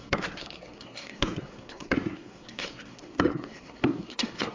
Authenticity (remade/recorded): remade